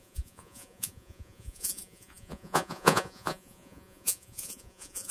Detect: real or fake fake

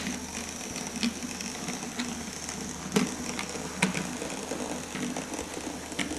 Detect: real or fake real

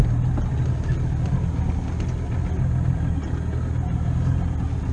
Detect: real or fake real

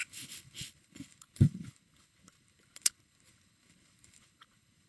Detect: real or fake fake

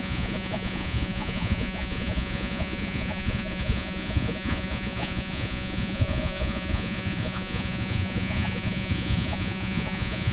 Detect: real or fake fake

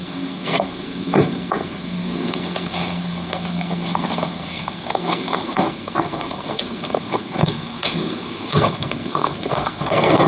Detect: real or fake fake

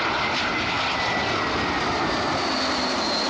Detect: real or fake real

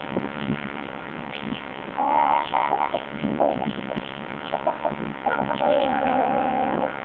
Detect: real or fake fake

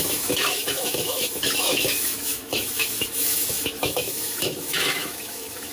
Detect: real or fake fake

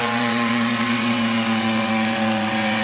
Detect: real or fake fake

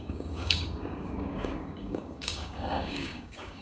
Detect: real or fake fake